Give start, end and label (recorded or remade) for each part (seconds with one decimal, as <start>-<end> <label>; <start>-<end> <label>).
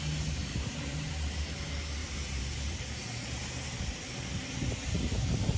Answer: 0.0-0.5 recorded; 0.5-1.1 remade; 1.1-2.0 recorded; 2.0-2.8 remade; 2.8-3.4 recorded; 3.4-3.9 remade; 3.9-5.6 recorded